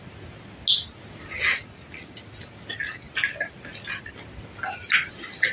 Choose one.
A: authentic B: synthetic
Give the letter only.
A